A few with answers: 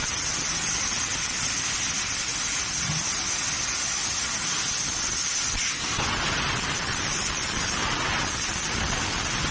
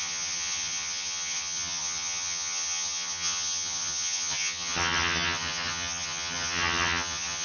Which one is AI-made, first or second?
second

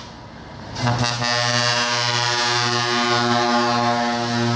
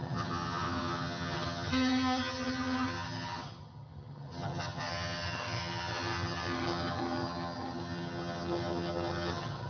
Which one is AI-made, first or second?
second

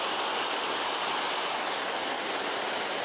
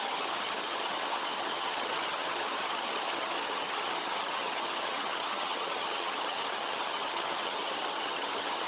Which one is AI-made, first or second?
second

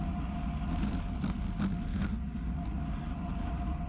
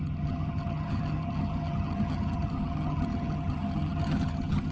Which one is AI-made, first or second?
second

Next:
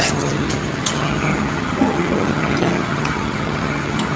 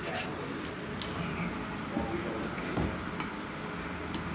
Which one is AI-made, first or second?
first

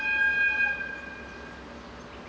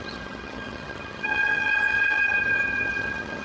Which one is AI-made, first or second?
second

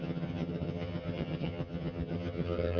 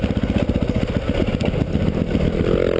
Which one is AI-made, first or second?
first